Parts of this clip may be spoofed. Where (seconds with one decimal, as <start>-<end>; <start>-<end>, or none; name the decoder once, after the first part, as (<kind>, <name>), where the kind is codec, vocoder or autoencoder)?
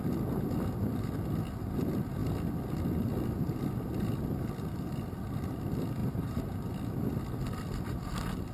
6.0-6.7 (vocoder, BigVGAN v2)